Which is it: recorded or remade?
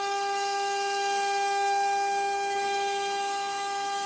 remade